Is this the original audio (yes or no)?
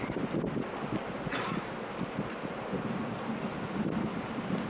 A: yes